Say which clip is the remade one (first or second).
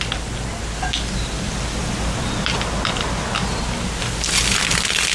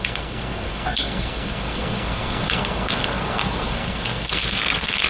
second